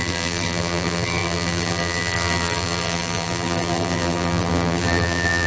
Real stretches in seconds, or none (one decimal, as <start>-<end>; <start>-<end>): none